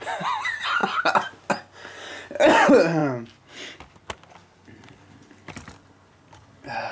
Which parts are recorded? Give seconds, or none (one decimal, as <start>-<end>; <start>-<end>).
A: 0.0-6.9